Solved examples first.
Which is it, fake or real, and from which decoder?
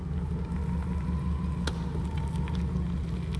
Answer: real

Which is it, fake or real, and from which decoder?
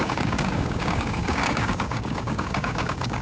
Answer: fake, codec, DAC